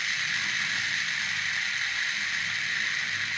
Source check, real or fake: real